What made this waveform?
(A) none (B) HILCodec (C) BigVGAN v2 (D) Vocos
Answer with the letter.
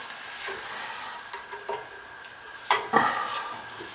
A